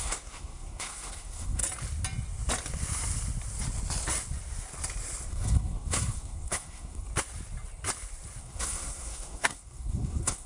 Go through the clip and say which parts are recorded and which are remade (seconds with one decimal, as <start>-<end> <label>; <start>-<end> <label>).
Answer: 0.0-1.6 remade; 1.6-5.3 recorded; 5.3-7.1 remade; 7.1-8.4 recorded; 8.4-10.5 remade